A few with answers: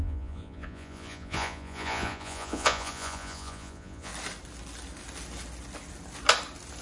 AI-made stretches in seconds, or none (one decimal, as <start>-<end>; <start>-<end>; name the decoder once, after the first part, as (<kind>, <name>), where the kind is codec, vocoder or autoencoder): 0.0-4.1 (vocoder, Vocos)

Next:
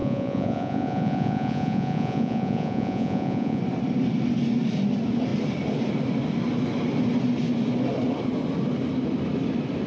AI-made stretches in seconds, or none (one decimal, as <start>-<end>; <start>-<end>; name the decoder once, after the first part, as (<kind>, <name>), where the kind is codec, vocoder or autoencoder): 0.0-3.6 (vocoder, Vocos)

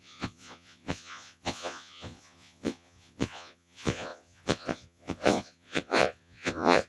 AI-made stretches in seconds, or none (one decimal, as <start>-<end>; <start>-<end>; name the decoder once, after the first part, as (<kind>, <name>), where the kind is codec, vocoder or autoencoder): 0.0-6.9 (vocoder, Vocos)

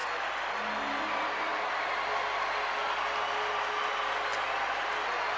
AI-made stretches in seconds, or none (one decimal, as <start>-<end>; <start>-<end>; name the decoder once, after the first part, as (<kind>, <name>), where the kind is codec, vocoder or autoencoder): none

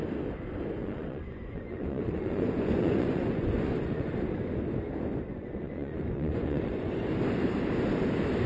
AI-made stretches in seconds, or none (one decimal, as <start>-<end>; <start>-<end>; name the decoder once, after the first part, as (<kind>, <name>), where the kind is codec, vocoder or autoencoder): 0.8-4.1 (vocoder, Vocos); 5.3-6.9

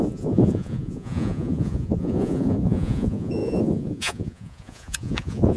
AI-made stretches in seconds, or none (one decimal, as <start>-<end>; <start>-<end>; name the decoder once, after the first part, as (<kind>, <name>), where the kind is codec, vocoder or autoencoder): 0.0-5.6 (vocoder, Vocos)